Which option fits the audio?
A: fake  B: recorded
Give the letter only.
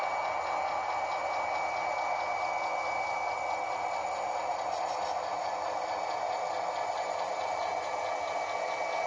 B